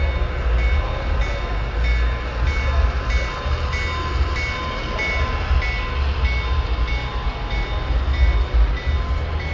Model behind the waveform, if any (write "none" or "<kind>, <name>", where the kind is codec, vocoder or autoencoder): none